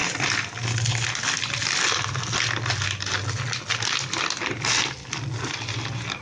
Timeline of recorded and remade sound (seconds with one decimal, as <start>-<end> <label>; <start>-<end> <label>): 0.0-6.2 recorded